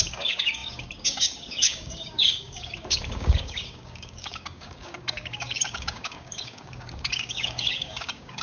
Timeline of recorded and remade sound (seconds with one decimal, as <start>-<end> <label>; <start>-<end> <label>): 0.0-8.4 remade